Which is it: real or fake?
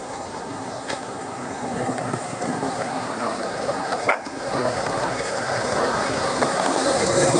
fake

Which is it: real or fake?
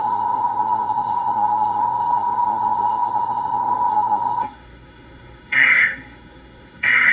fake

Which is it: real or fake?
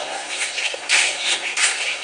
fake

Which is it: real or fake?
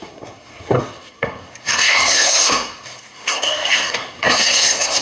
fake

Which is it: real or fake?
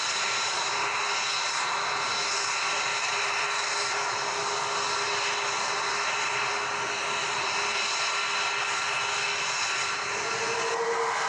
real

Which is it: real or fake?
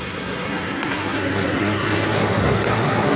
fake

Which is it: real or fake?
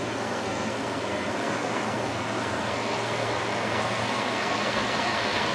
fake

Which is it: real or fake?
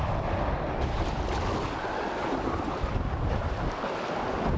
real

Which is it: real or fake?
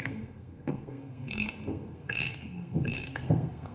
fake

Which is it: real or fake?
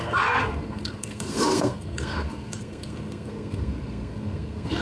fake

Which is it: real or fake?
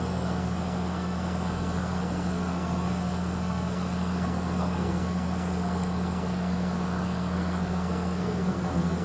fake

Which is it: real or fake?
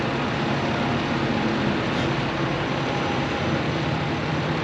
real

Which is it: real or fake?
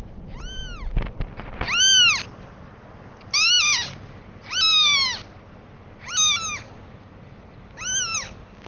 real